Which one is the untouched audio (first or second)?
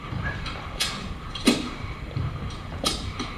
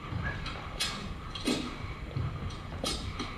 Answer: second